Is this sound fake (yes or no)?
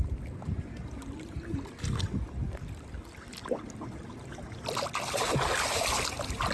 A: no